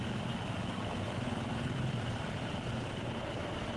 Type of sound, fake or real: real